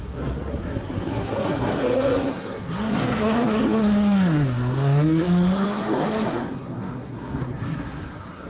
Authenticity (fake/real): fake